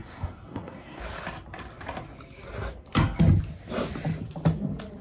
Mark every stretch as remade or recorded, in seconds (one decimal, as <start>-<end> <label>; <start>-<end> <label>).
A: 0.0-1.0 remade; 1.0-5.0 recorded